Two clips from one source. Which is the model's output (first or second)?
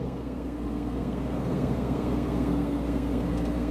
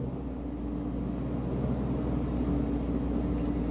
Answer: first